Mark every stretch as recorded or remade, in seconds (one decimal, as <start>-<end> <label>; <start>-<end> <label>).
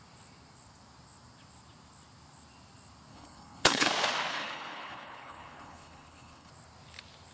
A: 0.0-3.1 recorded; 3.1-3.9 remade; 3.9-4.3 recorded; 4.3-6.5 remade; 6.5-7.3 recorded